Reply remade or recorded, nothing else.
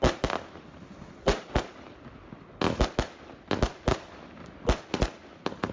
recorded